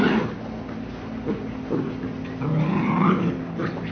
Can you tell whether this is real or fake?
real